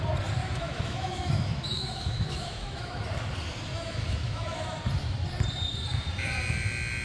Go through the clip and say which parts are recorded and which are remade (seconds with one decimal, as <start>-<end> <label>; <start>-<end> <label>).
0.0-0.4 recorded; 0.4-3.0 remade; 3.0-3.7 recorded; 3.7-4.8 remade; 4.8-7.0 recorded